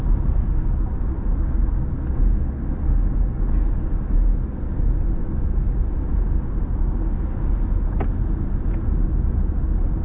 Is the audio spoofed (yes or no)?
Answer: no